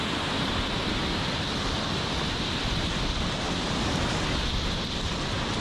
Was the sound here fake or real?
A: real